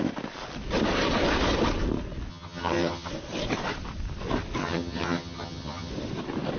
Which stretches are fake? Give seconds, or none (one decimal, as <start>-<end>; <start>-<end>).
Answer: 2.3-3.1; 4.6-5.9